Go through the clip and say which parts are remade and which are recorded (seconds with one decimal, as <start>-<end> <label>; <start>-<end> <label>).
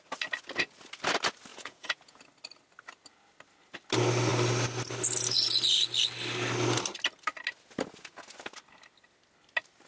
0.0-1.5 recorded; 1.5-2.2 remade; 2.2-9.9 recorded